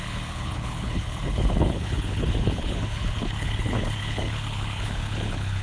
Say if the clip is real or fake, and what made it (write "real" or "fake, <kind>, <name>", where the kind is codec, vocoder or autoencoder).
fake, codec, HILCodec